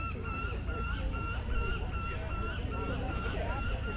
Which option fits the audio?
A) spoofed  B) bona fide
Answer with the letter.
A